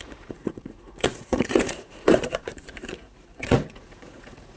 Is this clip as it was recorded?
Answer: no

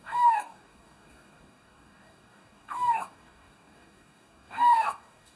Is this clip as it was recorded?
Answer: no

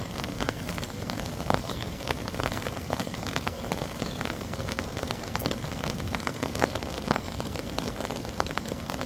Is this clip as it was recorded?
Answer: no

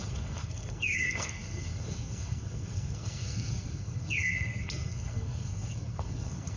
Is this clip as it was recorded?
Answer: no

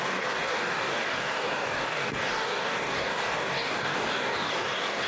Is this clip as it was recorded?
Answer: no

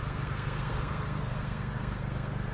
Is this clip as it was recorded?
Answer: no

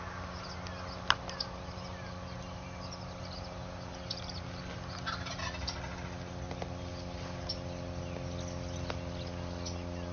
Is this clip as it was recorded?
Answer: yes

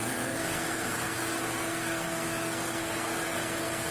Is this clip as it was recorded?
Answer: no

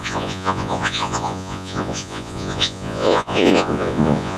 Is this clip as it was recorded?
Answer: no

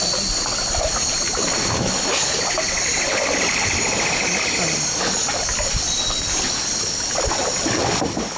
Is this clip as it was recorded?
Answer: yes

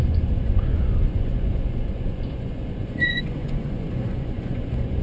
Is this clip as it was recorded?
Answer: no